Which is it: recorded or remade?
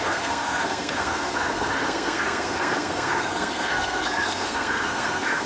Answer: remade